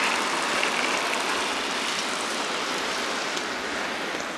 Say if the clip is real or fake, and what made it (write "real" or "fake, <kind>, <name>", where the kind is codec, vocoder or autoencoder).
real